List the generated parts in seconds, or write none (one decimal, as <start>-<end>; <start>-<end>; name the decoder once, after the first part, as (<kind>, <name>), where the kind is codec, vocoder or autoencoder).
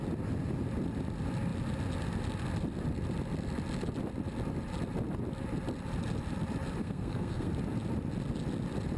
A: 6.8-7.5 (codec, SNAC)